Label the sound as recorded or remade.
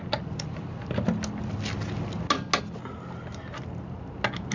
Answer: recorded